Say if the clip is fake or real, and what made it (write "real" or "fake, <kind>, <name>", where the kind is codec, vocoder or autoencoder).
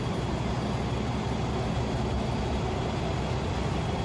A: real